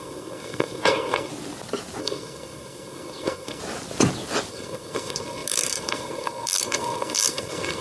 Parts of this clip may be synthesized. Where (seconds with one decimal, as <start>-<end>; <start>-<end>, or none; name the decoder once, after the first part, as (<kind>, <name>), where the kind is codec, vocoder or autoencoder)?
0.0-1.3 (codec, SNAC); 2.0-3.6; 4.5-7.8